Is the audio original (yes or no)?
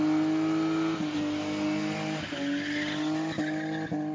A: yes